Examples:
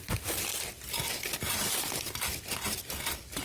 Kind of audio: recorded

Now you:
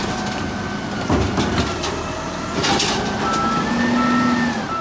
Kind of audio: recorded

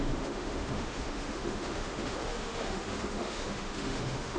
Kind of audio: remade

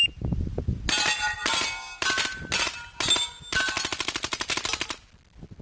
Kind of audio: recorded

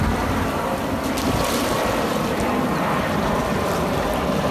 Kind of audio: recorded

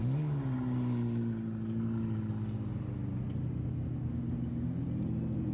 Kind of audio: recorded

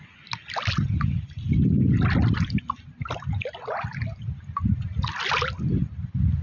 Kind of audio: recorded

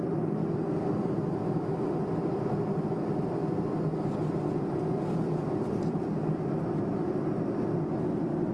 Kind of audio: recorded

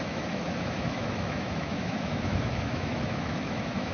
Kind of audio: remade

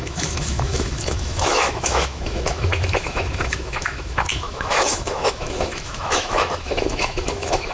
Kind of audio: remade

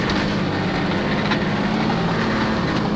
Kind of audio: recorded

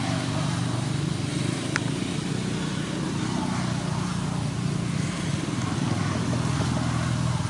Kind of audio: recorded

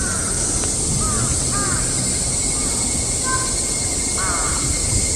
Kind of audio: recorded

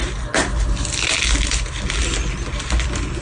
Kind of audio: recorded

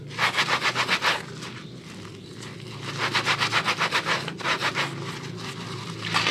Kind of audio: recorded